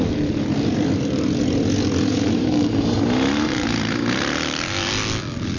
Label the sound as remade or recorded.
recorded